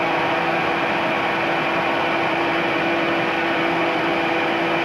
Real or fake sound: real